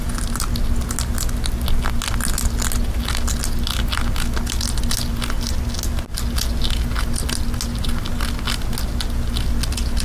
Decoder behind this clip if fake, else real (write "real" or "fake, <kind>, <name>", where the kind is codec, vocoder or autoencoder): real